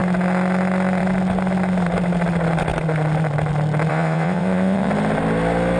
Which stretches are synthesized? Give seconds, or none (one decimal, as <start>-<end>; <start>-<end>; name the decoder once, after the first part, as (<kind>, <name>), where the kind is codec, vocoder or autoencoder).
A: 3.9-4.9 (vocoder, WaveNeXt)